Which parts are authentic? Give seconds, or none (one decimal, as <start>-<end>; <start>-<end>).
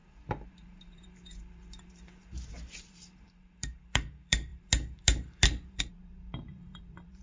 0.0-0.5